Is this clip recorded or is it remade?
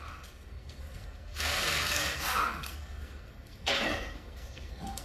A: remade